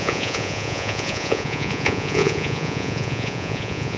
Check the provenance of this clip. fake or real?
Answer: fake